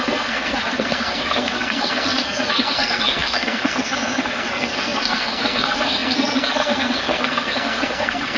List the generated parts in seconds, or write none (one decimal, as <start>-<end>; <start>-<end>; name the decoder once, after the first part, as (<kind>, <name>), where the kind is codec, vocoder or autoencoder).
0.0-8.4 (codec, SNAC)